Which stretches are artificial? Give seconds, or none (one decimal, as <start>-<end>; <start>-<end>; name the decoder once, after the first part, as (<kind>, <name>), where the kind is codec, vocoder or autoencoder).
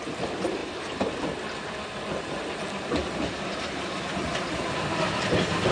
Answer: 0.6-2.3 (vocoder, BigVGAN v2); 3.0-5.7